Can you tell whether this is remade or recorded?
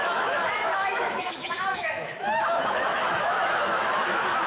remade